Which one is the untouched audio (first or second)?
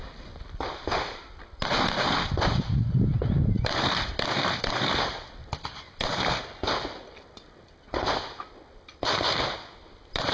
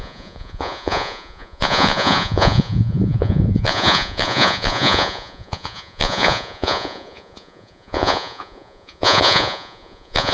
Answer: first